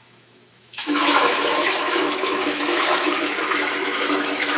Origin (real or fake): fake